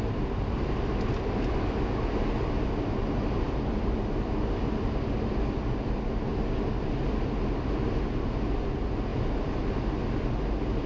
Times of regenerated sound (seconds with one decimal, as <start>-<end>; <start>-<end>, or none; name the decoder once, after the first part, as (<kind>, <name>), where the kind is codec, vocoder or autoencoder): none